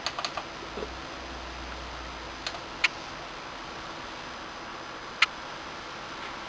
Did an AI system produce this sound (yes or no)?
no